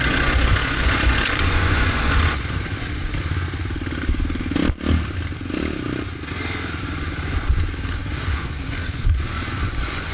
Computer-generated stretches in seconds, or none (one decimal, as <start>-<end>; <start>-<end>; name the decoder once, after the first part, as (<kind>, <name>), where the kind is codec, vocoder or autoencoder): 0.0-3.0 (vocoder, Vocos); 6.8-10.1